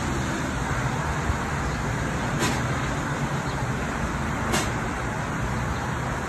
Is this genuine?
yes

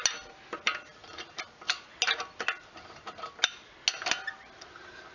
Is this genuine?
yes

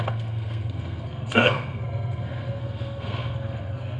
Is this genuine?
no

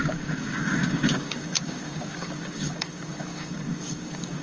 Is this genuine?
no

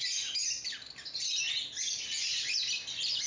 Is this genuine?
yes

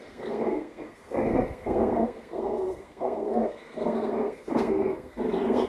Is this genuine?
no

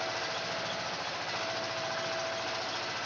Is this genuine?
yes